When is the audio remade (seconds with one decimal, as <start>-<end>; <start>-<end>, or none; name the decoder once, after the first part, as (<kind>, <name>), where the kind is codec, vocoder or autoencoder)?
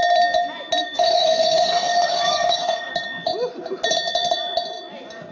0.8-2.9 (codec, DAC)